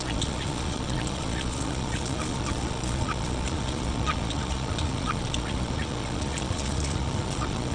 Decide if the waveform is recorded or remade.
remade